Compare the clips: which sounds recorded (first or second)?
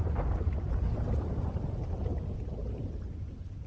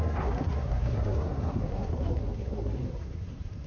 first